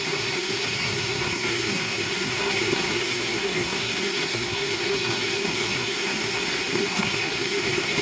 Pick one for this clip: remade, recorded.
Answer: remade